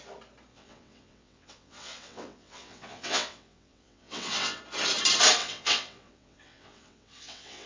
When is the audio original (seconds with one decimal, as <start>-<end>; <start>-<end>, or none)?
0.0-0.5; 4.6-5.4